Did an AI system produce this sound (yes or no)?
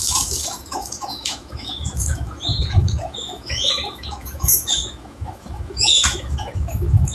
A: yes